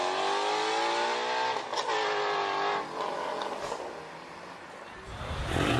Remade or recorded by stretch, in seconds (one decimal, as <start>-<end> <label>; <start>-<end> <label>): 0.0-5.8 recorded